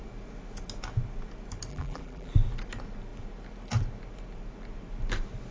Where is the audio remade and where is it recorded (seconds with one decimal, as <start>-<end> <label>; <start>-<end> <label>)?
0.0-1.7 recorded; 1.7-2.3 remade; 2.3-5.5 recorded